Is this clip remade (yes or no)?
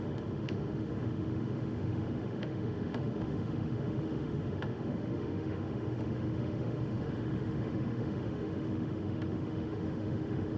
yes